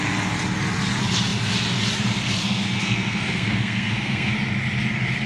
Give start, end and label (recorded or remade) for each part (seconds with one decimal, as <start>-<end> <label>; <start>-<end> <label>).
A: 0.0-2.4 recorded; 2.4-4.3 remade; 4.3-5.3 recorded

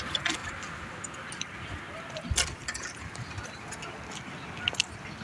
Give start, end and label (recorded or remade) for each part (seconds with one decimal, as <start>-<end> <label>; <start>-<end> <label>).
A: 0.0-5.2 recorded

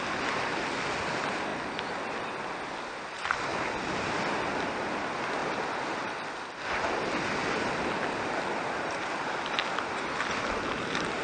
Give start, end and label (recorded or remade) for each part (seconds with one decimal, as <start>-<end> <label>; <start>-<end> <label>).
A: 0.0-11.2 recorded

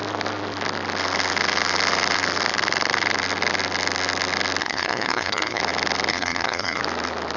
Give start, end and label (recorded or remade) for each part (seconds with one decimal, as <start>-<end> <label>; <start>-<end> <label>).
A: 0.0-4.6 recorded; 4.6-5.6 remade; 5.6-6.1 recorded; 6.1-6.8 remade; 6.8-7.4 recorded

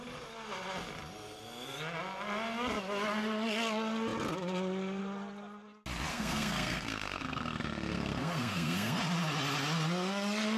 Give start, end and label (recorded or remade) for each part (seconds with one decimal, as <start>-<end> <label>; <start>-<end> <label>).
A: 0.0-6.1 recorded; 6.1-9.0 remade; 9.0-10.6 recorded

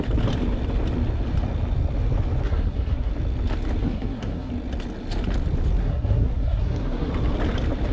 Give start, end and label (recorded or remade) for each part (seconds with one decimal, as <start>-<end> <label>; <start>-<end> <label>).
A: 0.0-2.4 recorded; 2.4-3.1 remade; 3.1-3.8 recorded; 3.8-4.5 remade; 4.5-5.8 recorded; 5.8-7.1 remade; 7.1-7.9 recorded

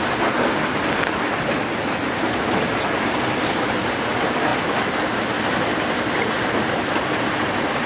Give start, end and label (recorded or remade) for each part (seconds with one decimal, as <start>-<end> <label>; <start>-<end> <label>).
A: 0.0-7.9 recorded